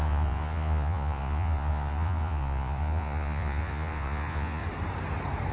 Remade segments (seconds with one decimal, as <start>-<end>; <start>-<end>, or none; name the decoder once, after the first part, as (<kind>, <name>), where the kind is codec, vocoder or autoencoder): 0.0-4.6 (vocoder, Vocos)